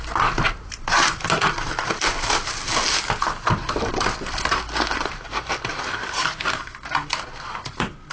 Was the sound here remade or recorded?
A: recorded